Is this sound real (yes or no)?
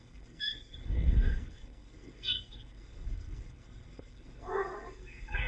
no